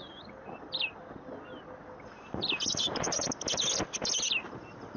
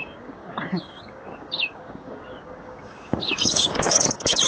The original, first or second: first